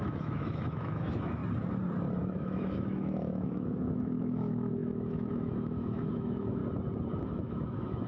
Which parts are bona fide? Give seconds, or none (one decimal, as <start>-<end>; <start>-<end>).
1.4-2.2; 6.6-7.2